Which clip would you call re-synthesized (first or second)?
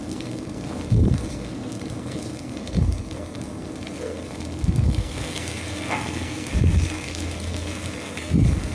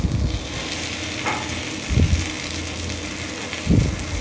first